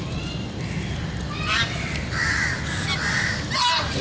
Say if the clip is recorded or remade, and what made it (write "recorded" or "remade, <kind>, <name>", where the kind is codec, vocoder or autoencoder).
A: recorded